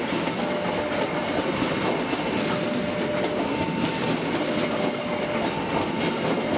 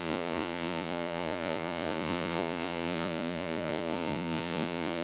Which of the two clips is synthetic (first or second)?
second